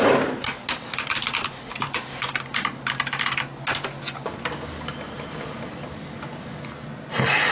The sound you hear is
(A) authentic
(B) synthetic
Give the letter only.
A